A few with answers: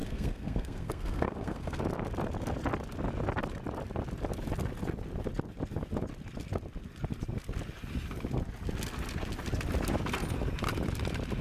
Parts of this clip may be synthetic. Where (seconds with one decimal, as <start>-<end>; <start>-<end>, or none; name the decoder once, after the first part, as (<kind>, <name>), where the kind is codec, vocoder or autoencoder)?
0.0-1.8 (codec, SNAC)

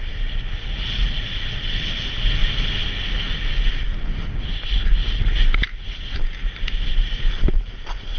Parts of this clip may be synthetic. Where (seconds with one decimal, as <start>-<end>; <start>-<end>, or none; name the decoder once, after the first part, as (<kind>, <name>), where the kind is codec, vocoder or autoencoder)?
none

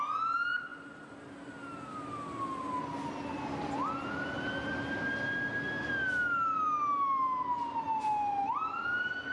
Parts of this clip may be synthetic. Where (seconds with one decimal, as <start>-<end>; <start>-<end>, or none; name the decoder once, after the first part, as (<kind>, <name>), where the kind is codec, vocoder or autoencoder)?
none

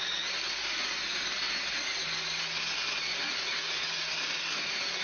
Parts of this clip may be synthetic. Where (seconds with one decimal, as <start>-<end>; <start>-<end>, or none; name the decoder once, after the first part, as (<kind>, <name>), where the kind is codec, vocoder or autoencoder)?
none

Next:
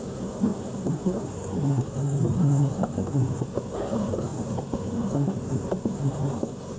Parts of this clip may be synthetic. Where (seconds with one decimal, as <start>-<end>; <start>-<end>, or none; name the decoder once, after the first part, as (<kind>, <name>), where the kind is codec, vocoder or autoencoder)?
0.0-6.8 (codec, SNAC)